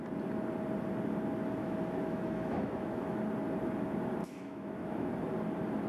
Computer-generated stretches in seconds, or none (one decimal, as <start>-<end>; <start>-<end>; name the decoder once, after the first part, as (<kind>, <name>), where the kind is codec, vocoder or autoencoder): 1.6-3.2 (autoencoder, DAC-VAE); 4.2-5.1